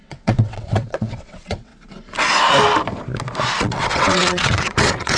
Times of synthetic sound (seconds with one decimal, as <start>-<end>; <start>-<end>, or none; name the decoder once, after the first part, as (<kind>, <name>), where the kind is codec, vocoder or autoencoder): 0.0-1.7 (vocoder, WaveNeXt); 3.6-5.2